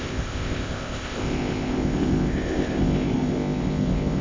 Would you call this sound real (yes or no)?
no